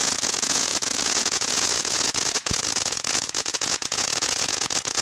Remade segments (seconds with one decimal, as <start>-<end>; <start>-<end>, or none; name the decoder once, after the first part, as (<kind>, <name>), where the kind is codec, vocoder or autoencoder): 0.0-5.0 (vocoder, Vocos)